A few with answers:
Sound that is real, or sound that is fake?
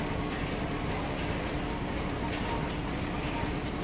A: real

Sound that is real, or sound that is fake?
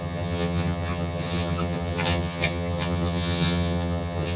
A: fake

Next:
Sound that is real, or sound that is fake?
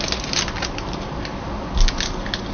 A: real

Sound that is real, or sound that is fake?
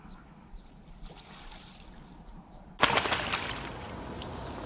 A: real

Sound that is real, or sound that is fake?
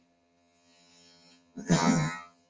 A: fake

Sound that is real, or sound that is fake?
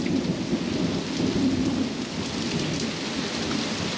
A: real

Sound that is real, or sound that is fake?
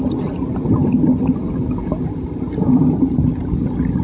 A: real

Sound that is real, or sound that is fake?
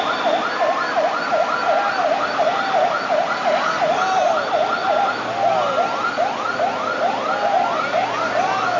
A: real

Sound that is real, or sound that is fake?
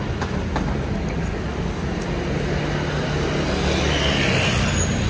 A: real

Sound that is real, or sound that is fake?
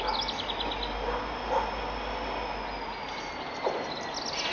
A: real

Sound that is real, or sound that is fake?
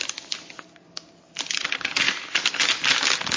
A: real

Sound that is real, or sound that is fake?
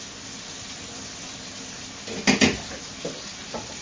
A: real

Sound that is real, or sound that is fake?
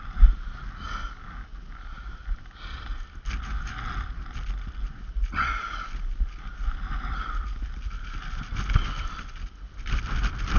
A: real